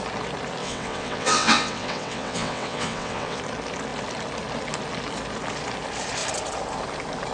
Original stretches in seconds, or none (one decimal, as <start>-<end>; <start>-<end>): 0.0-0.6; 3.4-7.3